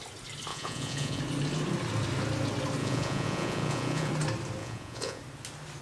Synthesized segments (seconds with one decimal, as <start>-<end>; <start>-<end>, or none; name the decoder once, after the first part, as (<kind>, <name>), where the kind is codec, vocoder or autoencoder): 0.5-1.2 (vocoder, Vocos); 2.8-4.1; 4.6-5.2